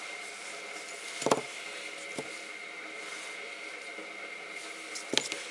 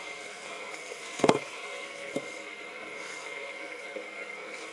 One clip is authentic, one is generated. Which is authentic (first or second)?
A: first